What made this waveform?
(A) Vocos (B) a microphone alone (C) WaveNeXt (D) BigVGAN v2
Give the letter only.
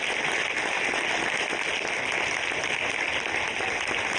B